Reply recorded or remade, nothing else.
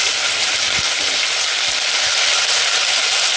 recorded